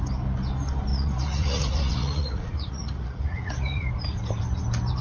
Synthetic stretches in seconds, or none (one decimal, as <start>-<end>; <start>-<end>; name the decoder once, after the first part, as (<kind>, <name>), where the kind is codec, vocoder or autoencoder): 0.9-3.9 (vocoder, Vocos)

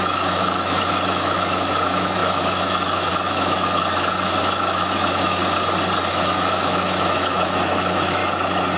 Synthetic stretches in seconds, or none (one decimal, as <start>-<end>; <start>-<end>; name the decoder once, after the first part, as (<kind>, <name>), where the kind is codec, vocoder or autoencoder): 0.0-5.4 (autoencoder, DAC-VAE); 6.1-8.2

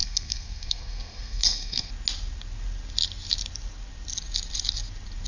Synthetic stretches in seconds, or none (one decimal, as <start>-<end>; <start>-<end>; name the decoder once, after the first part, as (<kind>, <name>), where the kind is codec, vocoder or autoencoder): 0.0-1.9 (codec, SNAC)

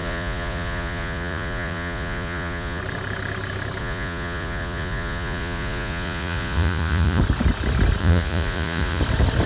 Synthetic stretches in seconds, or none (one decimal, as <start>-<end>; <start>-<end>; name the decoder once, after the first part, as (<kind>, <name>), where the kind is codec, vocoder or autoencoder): 0.0-2.8 (vocoder, Vocos); 3.8-7.2; 8.0-9.0